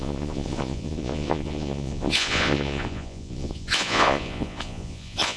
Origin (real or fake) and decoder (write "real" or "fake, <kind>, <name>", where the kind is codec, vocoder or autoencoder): fake, vocoder, Vocos